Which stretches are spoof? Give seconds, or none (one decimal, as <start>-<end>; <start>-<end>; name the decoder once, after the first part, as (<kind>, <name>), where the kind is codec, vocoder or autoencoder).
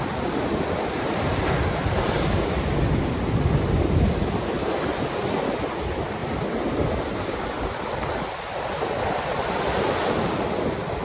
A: none